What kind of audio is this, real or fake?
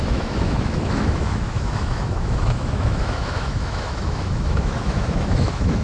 fake